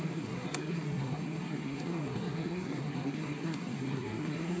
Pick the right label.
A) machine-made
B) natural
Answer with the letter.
A